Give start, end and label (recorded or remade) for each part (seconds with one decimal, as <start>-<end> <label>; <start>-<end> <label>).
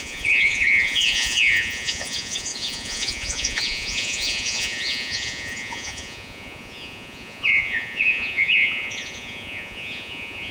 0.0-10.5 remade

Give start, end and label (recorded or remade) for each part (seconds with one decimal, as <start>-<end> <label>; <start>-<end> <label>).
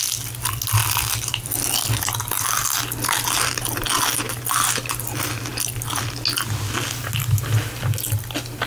0.0-8.7 recorded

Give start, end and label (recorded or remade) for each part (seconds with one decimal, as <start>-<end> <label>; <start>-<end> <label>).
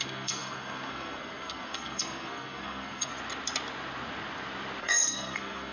0.0-3.1 remade; 3.1-4.8 recorded; 4.8-5.7 remade